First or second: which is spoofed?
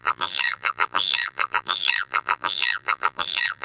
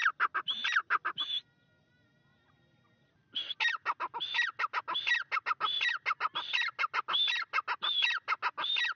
first